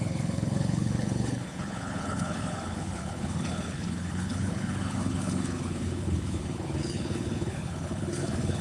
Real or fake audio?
fake